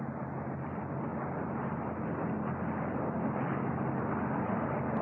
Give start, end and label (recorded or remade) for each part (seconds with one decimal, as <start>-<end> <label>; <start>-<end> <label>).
0.0-5.0 recorded